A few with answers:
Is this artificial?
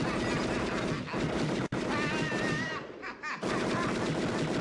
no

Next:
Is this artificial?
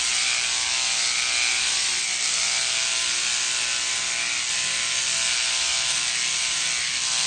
no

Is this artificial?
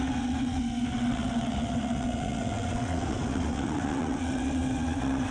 yes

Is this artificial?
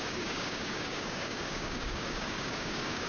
yes